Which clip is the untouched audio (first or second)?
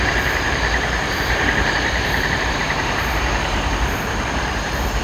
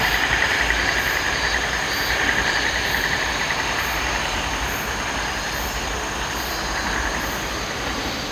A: second